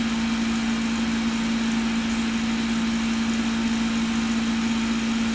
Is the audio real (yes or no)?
yes